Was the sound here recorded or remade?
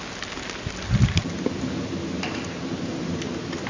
recorded